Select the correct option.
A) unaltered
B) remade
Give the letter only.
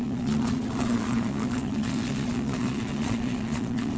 B